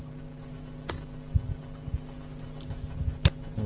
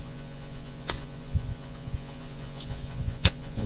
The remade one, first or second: second